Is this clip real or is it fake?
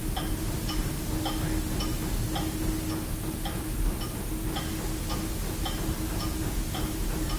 real